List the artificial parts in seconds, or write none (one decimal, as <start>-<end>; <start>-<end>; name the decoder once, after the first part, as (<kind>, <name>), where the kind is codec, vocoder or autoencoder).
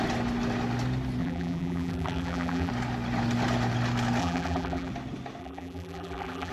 1.2-2.7 (vocoder, BigVGAN v2); 4.2-4.9; 5.4-6.5